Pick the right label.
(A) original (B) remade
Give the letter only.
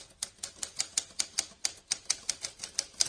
A